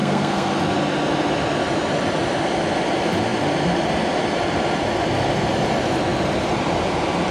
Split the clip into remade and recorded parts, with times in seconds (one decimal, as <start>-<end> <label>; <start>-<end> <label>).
0.0-0.5 remade; 0.5-7.3 recorded